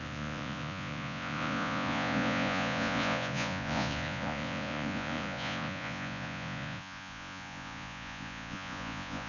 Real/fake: fake